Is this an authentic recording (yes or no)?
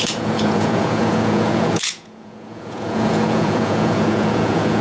no